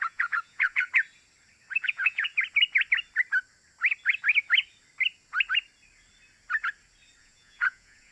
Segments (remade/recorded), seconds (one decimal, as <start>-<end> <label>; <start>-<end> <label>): 0.0-0.9 remade; 0.9-1.8 recorded; 1.8-2.3 remade; 2.3-7.2 recorded; 7.2-8.1 remade